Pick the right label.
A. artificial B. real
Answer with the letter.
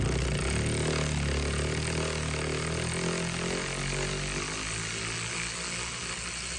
B